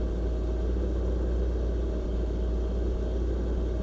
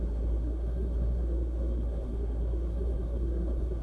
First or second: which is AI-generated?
second